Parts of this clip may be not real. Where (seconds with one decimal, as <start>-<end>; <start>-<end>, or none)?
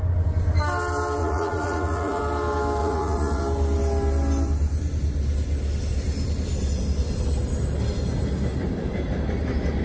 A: 1.2-2.2; 2.8-3.4